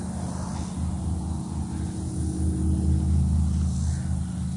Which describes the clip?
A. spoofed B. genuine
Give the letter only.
B